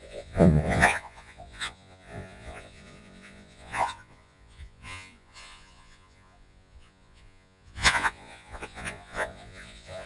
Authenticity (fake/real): fake